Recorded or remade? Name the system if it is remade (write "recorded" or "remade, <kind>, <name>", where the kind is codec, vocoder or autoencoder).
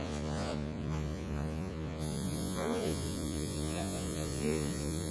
remade, vocoder, Vocos